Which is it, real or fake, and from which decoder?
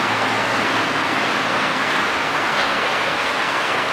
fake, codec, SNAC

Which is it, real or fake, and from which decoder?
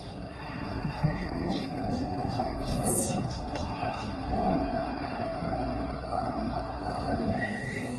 fake, codec, SNAC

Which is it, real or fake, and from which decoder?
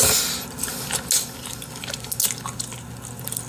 real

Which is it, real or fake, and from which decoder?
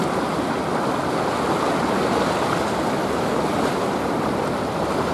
real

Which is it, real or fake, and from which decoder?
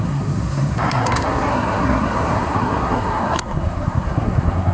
fake, codec, SNAC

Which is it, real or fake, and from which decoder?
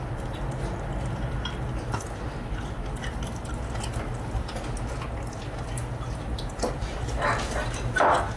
real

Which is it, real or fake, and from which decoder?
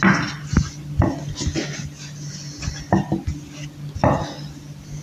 real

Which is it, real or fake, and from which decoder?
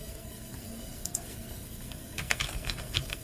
fake, codec, SNAC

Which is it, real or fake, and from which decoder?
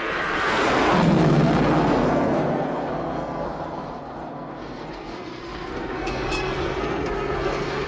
fake, codec, SNAC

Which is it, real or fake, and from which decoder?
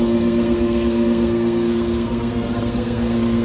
fake, codec, SNAC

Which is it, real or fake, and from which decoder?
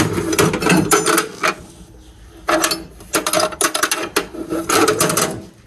real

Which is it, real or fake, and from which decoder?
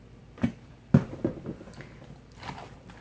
real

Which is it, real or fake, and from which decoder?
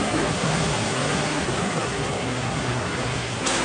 fake, codec, SNAC